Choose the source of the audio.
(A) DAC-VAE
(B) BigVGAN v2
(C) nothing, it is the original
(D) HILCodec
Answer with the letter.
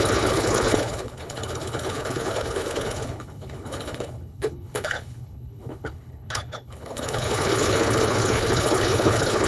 D